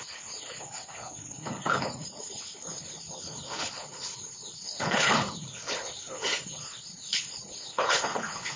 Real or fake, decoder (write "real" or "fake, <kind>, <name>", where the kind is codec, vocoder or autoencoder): fake, codec, HILCodec